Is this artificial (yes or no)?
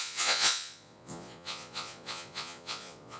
yes